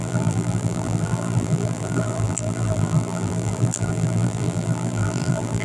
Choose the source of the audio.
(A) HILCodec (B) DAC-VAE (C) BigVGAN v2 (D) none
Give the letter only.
C